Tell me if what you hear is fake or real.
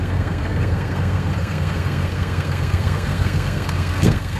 fake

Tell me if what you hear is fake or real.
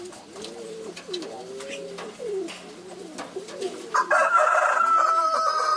real